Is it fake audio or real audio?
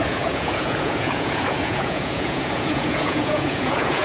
fake